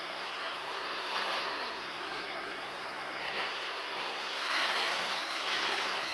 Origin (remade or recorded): remade